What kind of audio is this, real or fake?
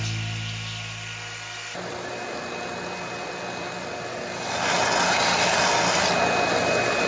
real